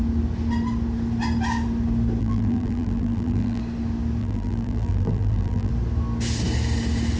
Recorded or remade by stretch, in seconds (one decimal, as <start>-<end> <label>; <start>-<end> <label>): 0.0-2.2 recorded; 2.2-3.6 remade; 3.6-4.2 recorded; 4.2-5.7 remade; 5.7-7.2 recorded